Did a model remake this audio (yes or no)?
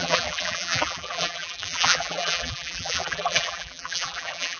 yes